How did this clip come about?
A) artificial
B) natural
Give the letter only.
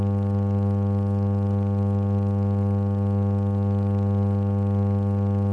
B